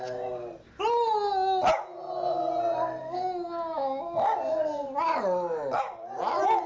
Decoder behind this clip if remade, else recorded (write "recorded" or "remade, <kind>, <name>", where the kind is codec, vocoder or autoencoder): recorded